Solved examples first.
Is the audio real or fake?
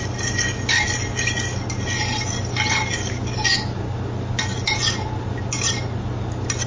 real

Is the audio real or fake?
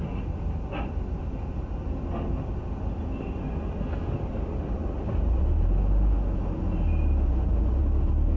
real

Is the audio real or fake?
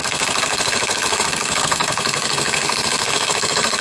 fake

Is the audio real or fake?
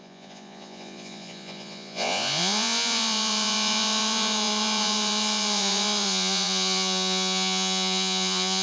fake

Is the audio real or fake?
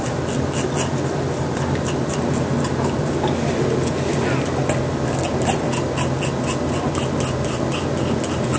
real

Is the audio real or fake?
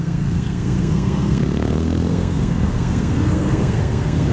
fake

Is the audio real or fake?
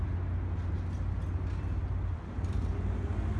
real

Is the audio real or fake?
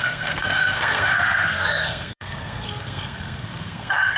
fake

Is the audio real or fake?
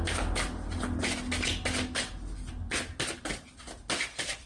real